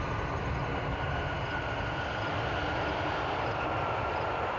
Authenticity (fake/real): real